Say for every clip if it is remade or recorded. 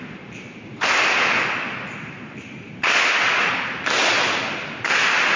recorded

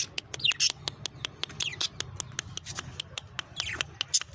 recorded